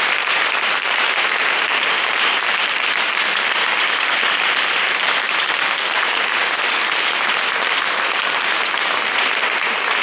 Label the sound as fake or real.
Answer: fake